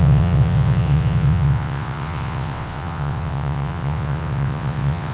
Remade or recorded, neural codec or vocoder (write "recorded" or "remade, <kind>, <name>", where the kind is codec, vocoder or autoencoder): remade, vocoder, WaveNeXt